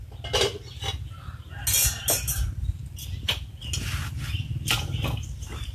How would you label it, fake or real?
real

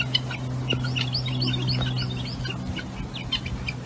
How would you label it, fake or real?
real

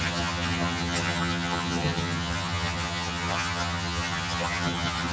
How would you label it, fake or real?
fake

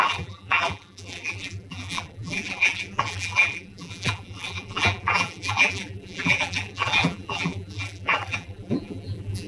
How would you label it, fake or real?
fake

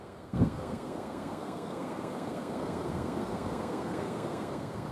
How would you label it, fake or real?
fake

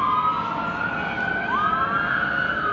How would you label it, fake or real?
real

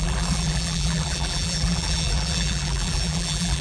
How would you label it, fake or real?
fake